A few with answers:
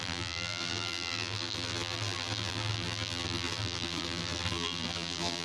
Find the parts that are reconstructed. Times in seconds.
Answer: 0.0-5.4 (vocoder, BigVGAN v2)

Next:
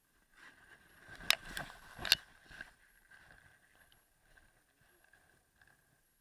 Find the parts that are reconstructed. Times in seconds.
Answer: none

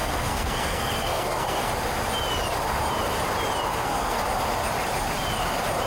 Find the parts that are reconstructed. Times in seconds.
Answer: 0.0-1.7 (codec, SNAC); 3.7-4.2